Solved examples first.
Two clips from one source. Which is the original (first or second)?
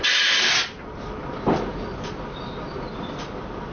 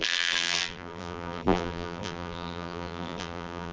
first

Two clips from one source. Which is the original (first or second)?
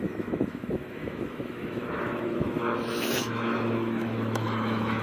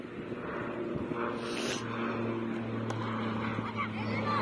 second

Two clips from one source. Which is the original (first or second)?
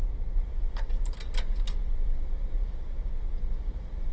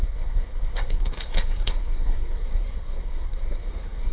first